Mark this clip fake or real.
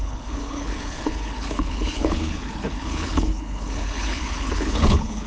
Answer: fake